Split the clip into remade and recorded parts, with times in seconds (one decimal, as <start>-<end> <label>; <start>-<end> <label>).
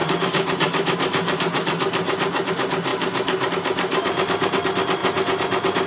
0.0-2.5 remade; 2.5-2.9 recorded; 2.9-3.5 remade; 3.5-3.9 recorded; 3.9-4.6 remade; 4.6-5.9 recorded